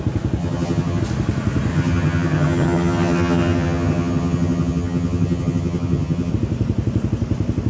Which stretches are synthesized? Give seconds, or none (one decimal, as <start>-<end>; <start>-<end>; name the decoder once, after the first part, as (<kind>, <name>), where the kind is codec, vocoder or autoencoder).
0.4-1.0 (vocoder, HiFi-GAN); 1.7-6.3

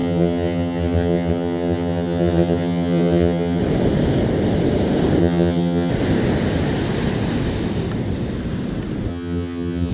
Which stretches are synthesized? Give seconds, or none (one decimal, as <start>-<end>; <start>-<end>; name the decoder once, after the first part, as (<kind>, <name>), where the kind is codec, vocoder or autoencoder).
0.0-3.6 (vocoder, HiFi-GAN); 5.2-5.9; 9.1-9.9

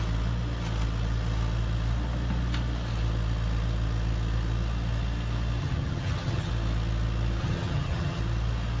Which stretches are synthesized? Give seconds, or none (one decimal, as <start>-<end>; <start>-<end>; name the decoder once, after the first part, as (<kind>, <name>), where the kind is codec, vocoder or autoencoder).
5.6-6.5 (vocoder, HiFi-GAN); 7.4-8.2